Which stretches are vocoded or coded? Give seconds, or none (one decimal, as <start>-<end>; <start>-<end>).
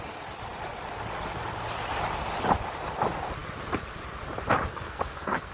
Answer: 4.7-5.5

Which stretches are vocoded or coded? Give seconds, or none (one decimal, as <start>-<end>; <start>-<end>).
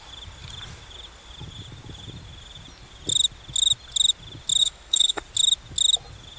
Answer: 4.6-5.2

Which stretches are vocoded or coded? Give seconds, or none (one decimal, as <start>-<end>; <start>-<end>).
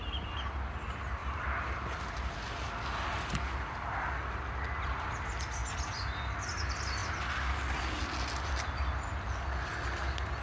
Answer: none